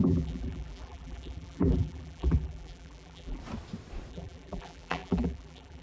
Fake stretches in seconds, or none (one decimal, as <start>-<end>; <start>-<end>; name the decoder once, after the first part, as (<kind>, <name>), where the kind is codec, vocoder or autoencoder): 0.0-3.4 (vocoder, BigVGAN v2); 4.1-5.8